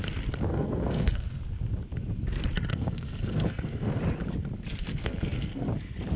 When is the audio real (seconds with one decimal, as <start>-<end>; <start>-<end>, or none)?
0.0-0.5; 1.4-2.7; 4.0-4.8; 5.7-6.2